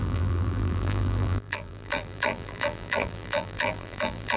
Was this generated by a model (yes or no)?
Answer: yes